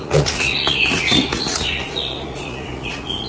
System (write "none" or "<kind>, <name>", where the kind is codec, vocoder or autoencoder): vocoder, Vocos